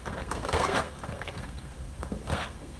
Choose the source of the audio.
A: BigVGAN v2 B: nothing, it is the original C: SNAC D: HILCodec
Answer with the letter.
C